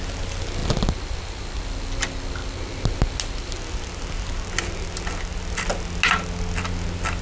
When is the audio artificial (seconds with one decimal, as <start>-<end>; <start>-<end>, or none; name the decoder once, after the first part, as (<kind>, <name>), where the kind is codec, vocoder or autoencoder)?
none